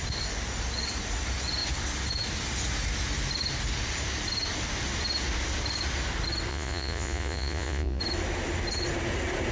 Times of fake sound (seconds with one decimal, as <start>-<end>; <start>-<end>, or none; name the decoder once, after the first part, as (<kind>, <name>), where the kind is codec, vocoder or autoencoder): 6.5-8.0 (vocoder, Vocos)